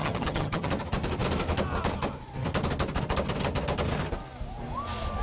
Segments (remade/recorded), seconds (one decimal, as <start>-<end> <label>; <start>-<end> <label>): 0.0-0.7 remade; 0.7-5.2 recorded